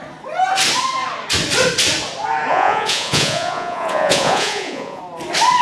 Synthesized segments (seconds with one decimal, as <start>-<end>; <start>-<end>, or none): 2.5-5.0